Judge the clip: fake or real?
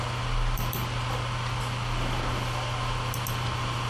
real